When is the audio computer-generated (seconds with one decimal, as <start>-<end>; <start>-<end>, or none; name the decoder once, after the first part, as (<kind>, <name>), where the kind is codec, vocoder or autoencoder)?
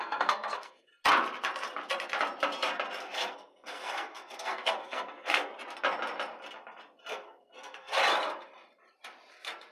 0.0-0.9 (codec, SNAC); 3.0-5.5; 7.1-8.0